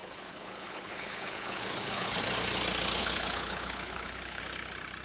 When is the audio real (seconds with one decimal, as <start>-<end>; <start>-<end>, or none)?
2.2-3.0; 4.4-5.0